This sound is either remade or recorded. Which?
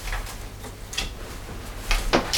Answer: recorded